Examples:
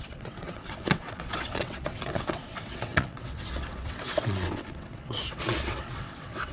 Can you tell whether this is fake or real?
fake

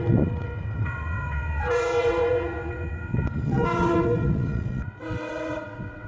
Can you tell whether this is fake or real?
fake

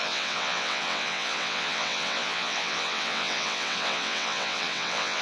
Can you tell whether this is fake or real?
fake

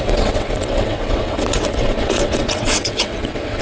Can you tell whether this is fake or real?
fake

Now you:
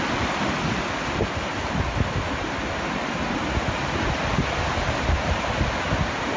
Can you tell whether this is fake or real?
real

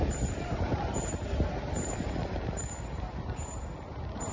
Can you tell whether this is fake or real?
real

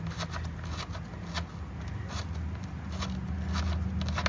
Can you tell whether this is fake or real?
real